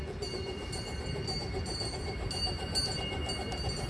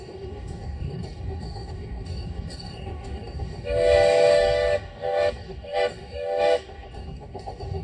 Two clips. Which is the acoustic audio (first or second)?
first